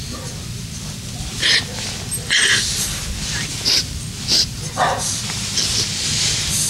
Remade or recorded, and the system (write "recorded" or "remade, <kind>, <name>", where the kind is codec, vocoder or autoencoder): recorded